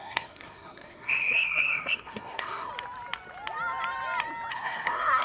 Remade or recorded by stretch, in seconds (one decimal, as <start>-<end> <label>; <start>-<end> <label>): 0.0-2.7 remade; 2.7-4.5 recorded; 4.5-5.2 remade